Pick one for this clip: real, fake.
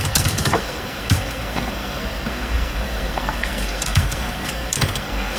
fake